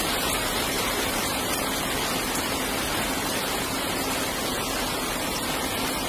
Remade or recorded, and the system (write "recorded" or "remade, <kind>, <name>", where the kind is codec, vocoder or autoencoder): remade, vocoder, BigVGAN v2